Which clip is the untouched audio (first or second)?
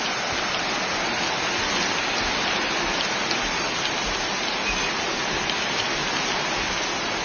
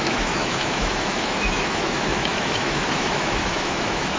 first